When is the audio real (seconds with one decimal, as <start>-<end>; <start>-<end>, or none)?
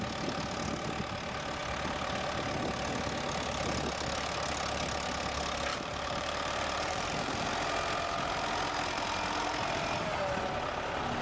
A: 0.0-5.7; 7.5-11.2